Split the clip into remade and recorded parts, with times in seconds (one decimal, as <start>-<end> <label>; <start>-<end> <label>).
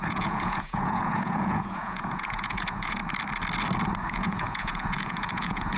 0.0-3.0 remade; 3.0-4.1 recorded; 4.1-5.8 remade